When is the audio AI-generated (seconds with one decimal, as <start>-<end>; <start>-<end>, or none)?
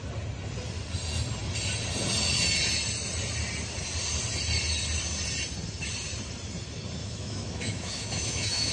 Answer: 7.0-8.7